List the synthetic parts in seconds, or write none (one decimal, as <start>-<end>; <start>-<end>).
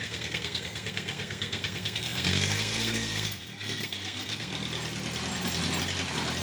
0.0-4.5